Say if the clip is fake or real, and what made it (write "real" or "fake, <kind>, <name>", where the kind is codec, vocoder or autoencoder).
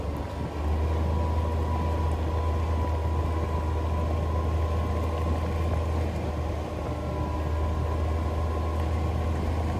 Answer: real